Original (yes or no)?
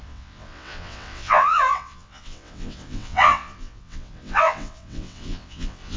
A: no